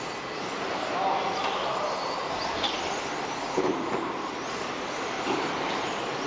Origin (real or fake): real